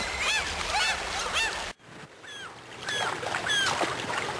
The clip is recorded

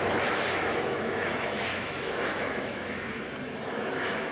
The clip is remade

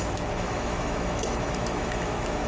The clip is remade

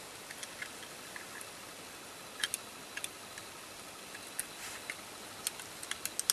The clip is recorded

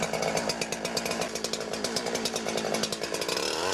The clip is recorded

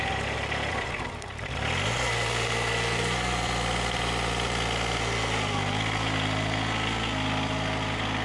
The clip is recorded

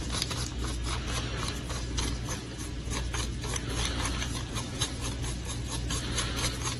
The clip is recorded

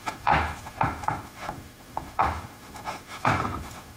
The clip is remade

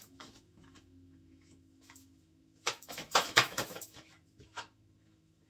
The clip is remade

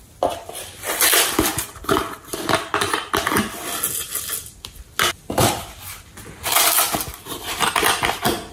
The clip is recorded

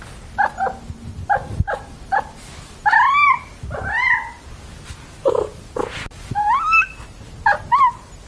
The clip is recorded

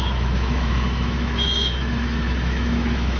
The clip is remade